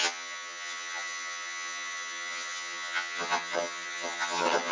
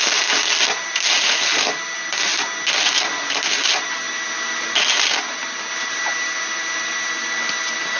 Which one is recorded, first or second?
second